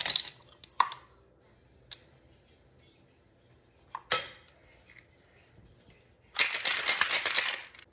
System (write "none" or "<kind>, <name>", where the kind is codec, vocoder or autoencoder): none